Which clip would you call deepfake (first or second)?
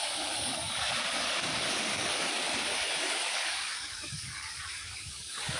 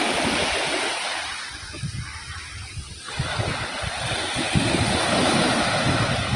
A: first